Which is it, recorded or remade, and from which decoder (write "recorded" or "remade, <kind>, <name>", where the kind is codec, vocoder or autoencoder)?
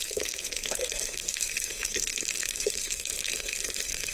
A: remade, codec, SNAC